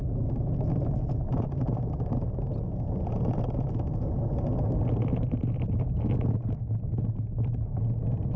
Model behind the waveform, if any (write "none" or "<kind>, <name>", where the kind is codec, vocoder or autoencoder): none